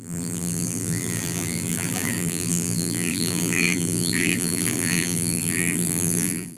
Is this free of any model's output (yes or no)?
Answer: no